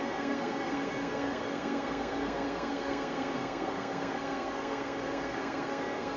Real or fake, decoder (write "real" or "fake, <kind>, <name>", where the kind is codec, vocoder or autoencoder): fake, codec, SNAC